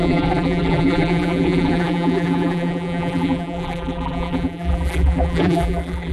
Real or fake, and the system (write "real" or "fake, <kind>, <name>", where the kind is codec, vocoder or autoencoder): fake, vocoder, BigVGAN v2